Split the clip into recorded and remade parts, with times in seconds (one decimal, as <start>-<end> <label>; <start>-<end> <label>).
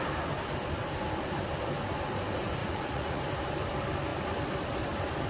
0.0-2.6 recorded; 2.6-3.2 remade; 3.2-5.3 recorded